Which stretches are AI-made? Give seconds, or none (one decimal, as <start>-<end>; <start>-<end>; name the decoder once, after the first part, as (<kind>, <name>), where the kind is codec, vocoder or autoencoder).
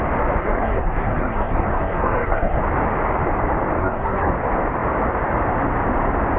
0.4-2.6 (codec, SNAC); 3.8-4.3